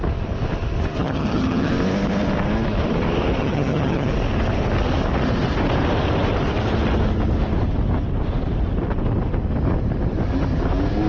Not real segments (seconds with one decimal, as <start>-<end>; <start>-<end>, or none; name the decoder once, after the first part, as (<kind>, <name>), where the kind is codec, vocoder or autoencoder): 1.0-1.7 (vocoder, HiFi-GAN); 3.4-4.1